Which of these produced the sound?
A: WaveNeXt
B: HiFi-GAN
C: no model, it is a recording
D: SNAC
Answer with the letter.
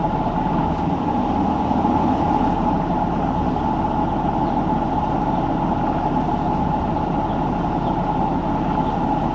C